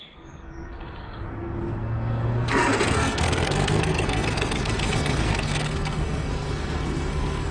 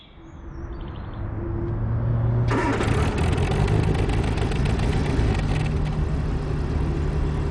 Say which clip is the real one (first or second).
second